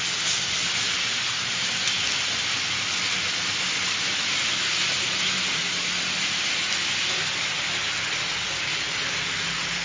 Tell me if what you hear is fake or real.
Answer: real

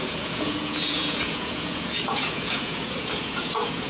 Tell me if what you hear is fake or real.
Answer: fake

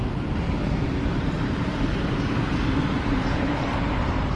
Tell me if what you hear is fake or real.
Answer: fake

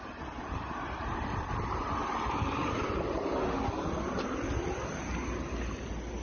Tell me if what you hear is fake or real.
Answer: real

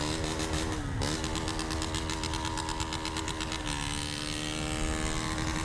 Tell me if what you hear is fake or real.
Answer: real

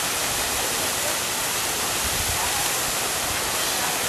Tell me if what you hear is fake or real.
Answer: real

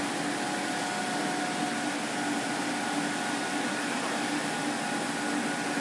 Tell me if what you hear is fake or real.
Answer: real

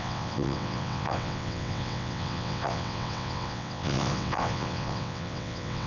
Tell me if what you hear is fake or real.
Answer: fake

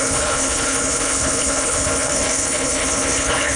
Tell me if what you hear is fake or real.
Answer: fake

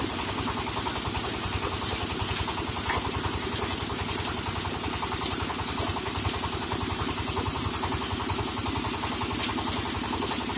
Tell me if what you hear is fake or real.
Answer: real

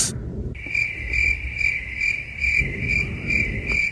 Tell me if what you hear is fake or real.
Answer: real